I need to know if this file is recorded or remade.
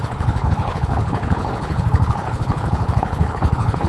remade